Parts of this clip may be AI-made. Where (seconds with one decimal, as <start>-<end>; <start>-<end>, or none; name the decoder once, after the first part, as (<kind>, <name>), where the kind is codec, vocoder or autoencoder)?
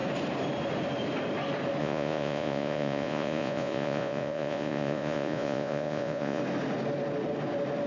1.8-6.4 (vocoder, Vocos)